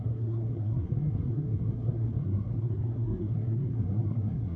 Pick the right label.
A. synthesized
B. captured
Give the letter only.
A